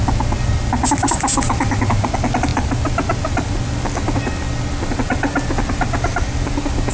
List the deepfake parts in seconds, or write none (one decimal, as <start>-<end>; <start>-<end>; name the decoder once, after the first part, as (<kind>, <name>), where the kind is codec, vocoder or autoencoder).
none